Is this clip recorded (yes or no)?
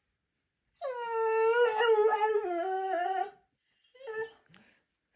yes